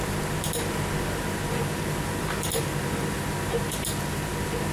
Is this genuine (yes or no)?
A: no